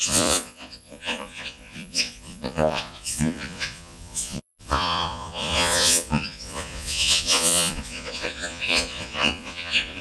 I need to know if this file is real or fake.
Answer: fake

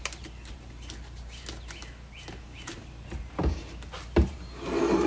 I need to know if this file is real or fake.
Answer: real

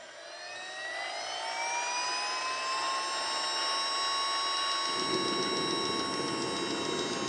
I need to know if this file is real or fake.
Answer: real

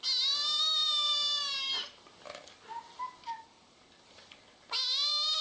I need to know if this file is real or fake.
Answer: real